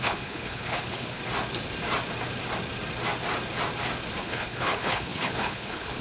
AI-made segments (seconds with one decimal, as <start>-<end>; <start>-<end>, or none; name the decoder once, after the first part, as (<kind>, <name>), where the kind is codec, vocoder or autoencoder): 0.0-1.2 (codec, HILCodec); 4.2-6.0